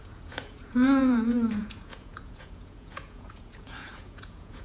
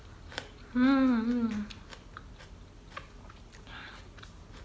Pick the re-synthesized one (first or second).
first